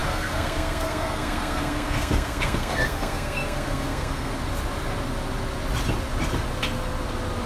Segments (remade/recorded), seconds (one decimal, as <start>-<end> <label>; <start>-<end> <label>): 0.0-4.3 remade; 4.3-7.5 recorded